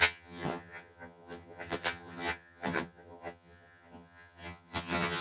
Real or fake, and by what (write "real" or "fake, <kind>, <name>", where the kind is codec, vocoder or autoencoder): fake, vocoder, HiFi-GAN